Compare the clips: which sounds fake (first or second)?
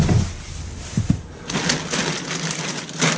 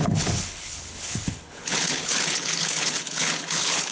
second